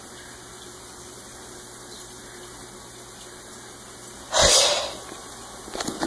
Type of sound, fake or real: real